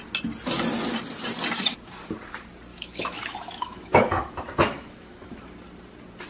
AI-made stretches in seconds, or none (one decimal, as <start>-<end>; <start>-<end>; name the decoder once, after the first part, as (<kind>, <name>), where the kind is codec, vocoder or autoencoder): 2.7-5.4 (autoencoder, DAC-VAE)